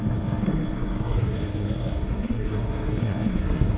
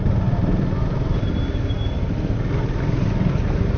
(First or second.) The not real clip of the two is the first